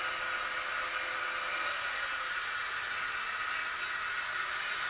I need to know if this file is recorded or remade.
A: recorded